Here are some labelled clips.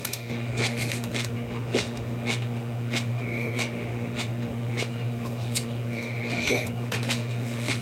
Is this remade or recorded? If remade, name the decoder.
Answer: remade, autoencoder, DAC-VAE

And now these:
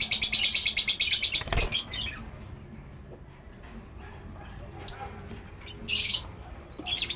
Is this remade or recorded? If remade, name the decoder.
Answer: recorded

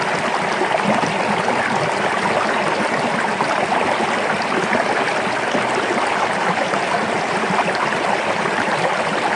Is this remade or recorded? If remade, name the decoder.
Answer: recorded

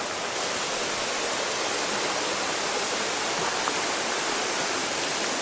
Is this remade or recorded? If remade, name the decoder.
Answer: recorded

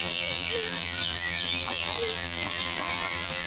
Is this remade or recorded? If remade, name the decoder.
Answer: remade, vocoder, BigVGAN v2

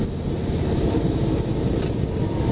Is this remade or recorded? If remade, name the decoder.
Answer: recorded